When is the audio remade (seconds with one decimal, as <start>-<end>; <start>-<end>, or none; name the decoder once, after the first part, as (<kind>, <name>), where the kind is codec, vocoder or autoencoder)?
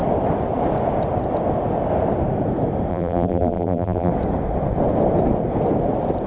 2.9-4.1 (vocoder, BigVGAN v2)